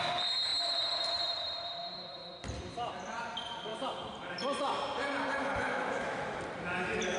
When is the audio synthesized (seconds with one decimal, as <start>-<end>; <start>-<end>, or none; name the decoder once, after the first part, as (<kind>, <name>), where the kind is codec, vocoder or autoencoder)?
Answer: 5.4-6.4 (autoencoder, DAC-VAE)